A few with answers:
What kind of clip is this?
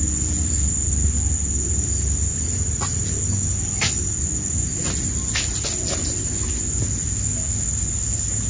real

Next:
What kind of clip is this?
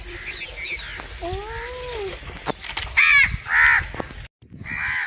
real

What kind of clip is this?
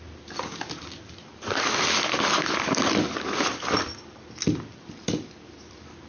real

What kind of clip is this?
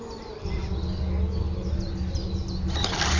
real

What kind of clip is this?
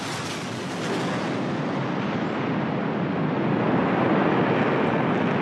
real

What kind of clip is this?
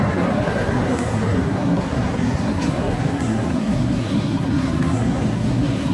fake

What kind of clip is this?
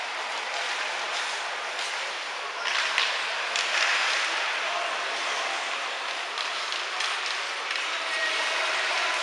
real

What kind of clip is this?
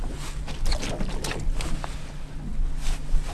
real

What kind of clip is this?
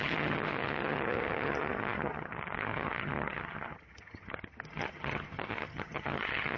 fake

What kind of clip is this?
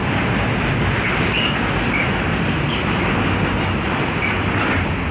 real